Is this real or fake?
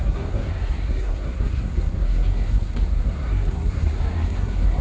fake